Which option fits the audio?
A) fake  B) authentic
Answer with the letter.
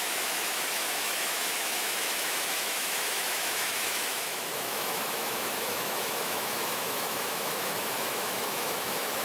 A